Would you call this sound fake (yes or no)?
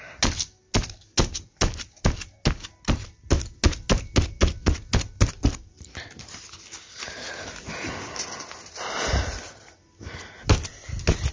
no